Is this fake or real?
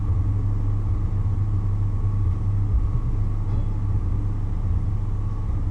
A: real